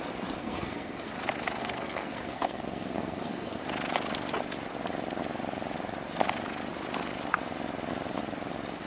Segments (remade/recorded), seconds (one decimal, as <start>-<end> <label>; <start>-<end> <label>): 0.0-0.4 recorded; 0.4-1.1 remade; 1.1-1.6 recorded; 1.6-3.6 remade; 3.6-8.9 recorded